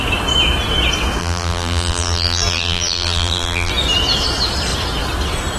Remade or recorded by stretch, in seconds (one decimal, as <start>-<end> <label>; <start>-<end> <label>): 0.0-1.2 recorded; 1.2-3.7 remade; 3.7-5.6 recorded